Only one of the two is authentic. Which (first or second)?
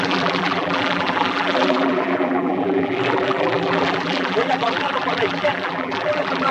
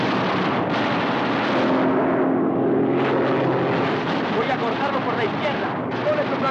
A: second